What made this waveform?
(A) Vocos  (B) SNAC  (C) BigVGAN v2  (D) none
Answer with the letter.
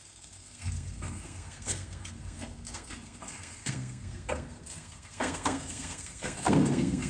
B